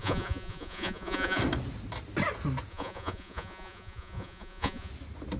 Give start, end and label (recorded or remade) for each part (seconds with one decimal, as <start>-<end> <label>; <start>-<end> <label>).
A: 0.0-1.4 remade; 1.4-2.7 recorded; 2.7-4.9 remade; 4.9-5.4 recorded